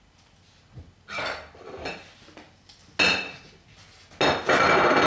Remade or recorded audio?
recorded